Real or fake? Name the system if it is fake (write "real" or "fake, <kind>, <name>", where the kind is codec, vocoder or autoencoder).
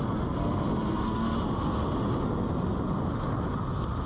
real